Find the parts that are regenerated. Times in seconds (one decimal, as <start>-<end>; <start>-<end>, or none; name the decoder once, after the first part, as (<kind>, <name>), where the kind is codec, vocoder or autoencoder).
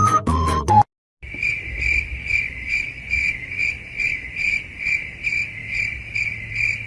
0.0-0.8 (vocoder, Vocos); 2.2-4.9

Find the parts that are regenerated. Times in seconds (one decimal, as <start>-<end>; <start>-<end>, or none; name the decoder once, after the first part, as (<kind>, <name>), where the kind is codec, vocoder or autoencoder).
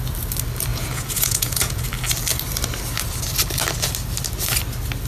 0.7-1.8 (vocoder, Vocos)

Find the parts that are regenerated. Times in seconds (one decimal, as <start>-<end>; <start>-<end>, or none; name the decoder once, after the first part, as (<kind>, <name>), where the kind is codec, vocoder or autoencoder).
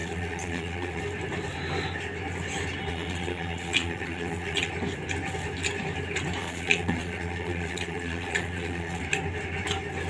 0.0-1.0 (vocoder, Vocos); 2.9-4.7; 6.4-9.0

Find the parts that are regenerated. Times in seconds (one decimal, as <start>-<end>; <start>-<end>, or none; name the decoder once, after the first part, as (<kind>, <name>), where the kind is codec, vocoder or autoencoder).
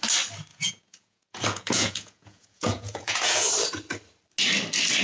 0.5-3.5 (vocoder, Vocos)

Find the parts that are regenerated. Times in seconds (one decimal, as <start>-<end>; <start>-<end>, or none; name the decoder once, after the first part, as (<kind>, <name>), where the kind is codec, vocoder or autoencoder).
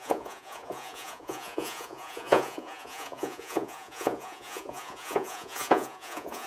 0.0-6.5 (vocoder, Vocos)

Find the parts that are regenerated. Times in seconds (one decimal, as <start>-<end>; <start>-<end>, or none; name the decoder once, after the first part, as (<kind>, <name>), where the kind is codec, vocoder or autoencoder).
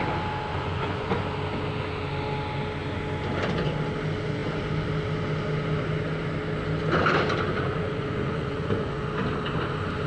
0.5-1.1 (vocoder, Vocos); 7.5-9.0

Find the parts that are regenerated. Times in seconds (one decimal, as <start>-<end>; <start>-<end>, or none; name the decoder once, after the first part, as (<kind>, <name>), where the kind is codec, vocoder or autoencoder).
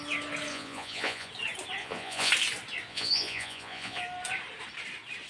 0.5-1.3 (vocoder, Vocos); 1.8-2.3; 2.9-4.0